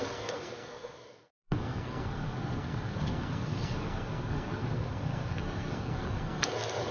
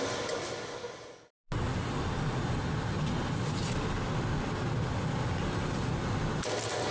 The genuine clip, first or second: second